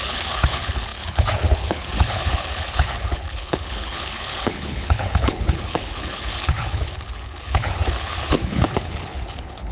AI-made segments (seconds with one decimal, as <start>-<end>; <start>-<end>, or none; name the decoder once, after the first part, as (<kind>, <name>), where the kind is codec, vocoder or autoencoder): 0.0-9.7 (codec, HILCodec)